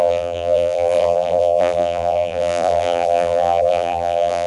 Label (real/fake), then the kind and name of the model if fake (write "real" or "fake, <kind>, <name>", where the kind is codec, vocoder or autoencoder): fake, vocoder, BigVGAN v2